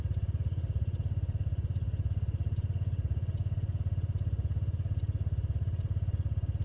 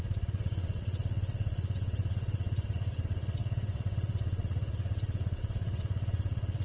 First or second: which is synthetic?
second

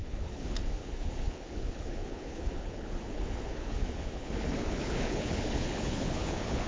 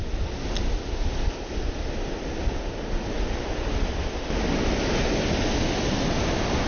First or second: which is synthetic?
first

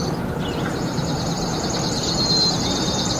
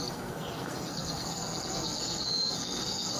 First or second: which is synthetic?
second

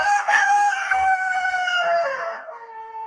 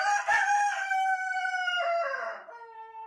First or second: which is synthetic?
first